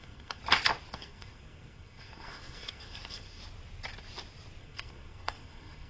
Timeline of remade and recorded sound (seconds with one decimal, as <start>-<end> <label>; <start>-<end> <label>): 0.0-0.4 remade; 0.4-0.9 recorded; 0.9-3.4 remade; 3.4-4.6 recorded; 4.6-5.9 remade